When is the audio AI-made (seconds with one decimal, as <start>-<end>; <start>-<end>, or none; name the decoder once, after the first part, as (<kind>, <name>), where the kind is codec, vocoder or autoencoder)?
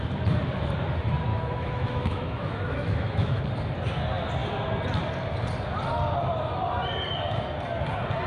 1.3-3.4 (autoencoder, DAC-VAE)